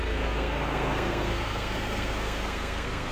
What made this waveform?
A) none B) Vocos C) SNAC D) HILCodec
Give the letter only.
C